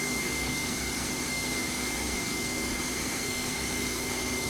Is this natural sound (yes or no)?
no